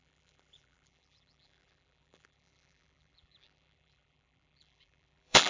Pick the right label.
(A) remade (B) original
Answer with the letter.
A